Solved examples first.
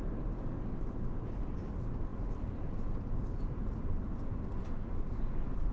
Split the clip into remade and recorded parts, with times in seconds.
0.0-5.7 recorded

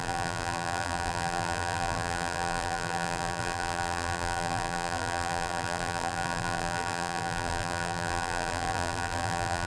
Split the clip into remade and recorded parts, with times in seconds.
0.0-9.7 remade

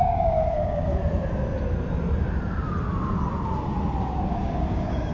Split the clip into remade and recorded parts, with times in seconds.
0.0-0.9 remade; 0.9-4.0 recorded; 4.0-5.1 remade

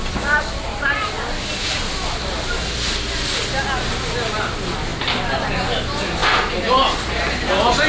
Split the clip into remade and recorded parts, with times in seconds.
0.0-7.9 recorded

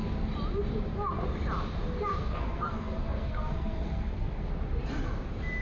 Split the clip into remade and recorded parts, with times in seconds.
0.0-2.1 recorded; 2.1-4.5 remade; 4.5-5.6 recorded

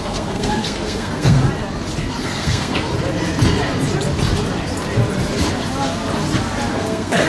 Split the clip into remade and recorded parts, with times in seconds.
0.0-1.4 remade; 1.4-2.1 recorded; 2.1-2.9 remade; 2.9-6.7 recorded; 6.7-7.3 remade